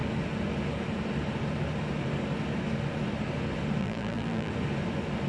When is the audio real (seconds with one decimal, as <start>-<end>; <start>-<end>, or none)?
0.0-3.8; 4.5-5.3